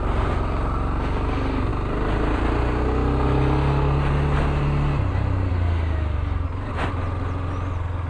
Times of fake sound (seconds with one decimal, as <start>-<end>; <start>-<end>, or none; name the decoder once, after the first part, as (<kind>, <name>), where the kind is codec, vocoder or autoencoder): none